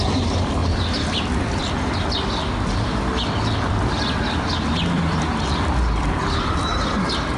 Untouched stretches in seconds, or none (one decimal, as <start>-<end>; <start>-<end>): 0.0-0.6; 1.6-2.4; 6.8-7.4